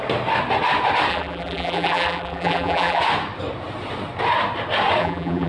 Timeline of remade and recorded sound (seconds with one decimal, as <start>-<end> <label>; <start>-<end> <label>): 0.0-1.1 recorded; 1.1-3.0 remade; 3.0-5.0 recorded; 5.0-5.5 remade